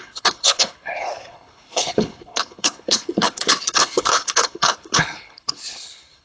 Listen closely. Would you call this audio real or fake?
fake